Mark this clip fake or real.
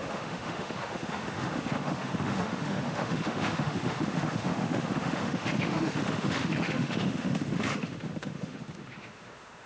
fake